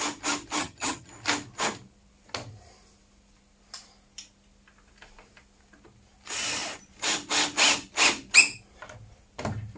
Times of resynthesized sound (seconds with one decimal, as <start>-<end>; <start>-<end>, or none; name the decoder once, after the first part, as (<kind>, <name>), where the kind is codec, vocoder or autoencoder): 0.6-1.1 (vocoder, HiFi-GAN)